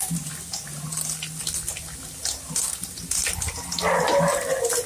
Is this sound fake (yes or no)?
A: no